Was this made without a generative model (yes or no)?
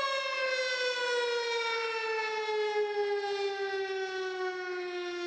yes